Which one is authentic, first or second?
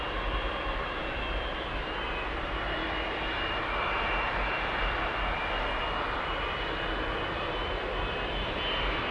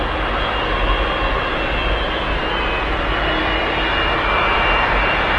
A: second